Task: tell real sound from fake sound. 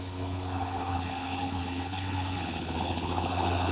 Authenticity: fake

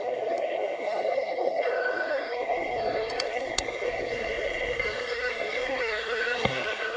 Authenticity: fake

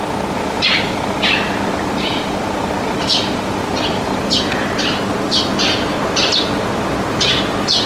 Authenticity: real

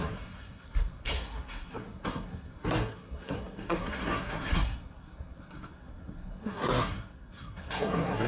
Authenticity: fake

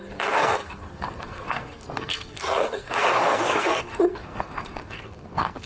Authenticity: fake